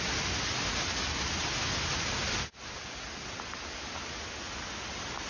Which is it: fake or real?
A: real